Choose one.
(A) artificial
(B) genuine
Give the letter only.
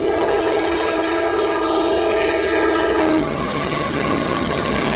A